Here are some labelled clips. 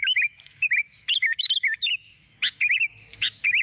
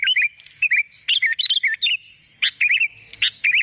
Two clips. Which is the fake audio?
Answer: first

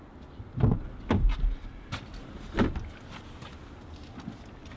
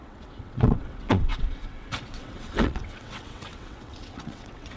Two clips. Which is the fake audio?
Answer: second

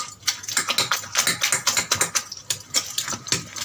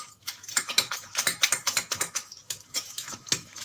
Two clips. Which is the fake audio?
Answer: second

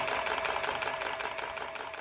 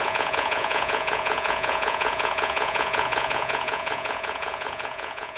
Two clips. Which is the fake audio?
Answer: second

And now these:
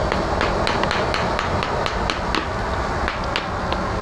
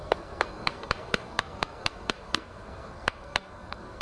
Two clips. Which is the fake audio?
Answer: second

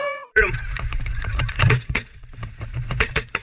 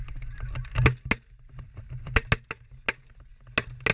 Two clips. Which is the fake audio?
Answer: first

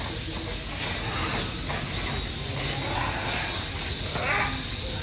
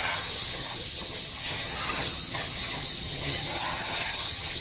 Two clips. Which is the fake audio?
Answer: second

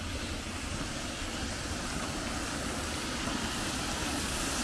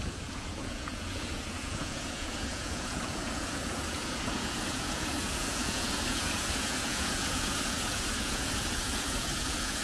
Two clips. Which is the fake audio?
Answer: second